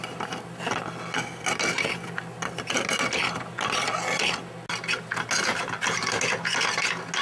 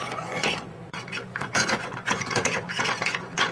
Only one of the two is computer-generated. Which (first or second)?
second